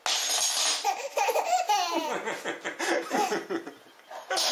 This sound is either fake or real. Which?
real